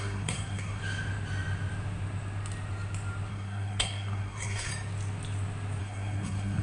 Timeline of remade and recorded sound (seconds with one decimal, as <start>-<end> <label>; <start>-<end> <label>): 0.0-0.8 remade; 0.8-3.3 recorded; 3.3-4.7 remade; 4.7-5.8 recorded; 5.8-6.6 remade